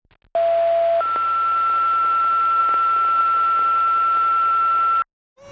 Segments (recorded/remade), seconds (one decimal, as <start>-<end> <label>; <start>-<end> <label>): 0.0-5.5 recorded